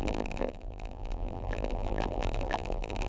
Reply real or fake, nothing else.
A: fake